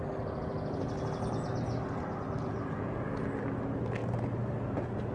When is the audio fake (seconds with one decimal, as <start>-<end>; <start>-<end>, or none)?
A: none